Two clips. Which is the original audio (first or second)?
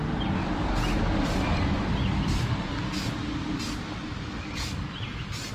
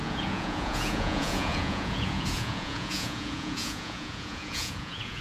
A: first